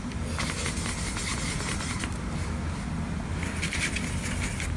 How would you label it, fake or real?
real